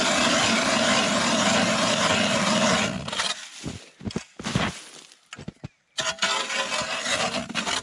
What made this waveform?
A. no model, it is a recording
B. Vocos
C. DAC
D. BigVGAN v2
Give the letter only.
A